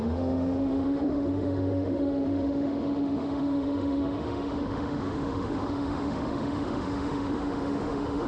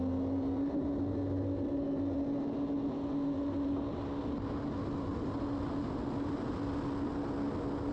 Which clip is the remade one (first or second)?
first